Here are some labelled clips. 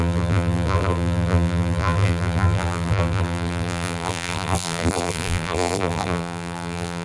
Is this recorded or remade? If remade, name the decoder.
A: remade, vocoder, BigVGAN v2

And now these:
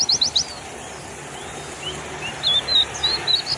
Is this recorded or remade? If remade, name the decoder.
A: recorded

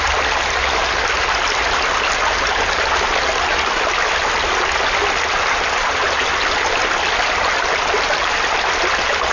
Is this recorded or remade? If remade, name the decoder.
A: recorded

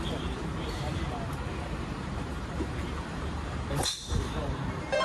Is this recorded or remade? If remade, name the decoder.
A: remade, vocoder, BigVGAN v2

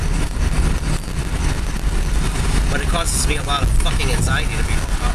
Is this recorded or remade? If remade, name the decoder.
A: recorded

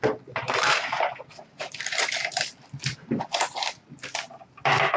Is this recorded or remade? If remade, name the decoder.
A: recorded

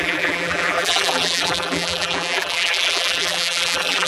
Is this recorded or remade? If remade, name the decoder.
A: remade, vocoder, BigVGAN v2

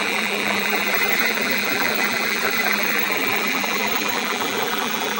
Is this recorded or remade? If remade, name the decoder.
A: remade, vocoder, BigVGAN v2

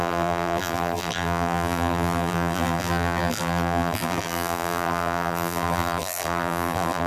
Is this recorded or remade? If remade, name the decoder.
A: remade, vocoder, BigVGAN v2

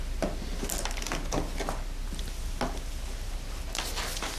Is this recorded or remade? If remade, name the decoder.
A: recorded